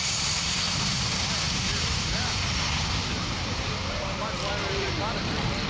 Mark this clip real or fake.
fake